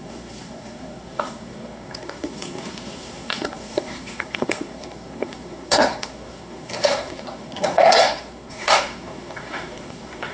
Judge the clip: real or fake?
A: fake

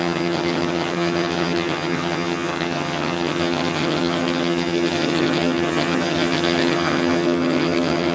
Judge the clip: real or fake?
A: fake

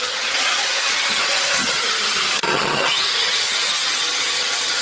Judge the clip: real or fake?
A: fake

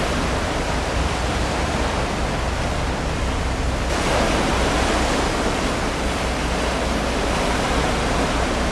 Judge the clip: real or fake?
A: real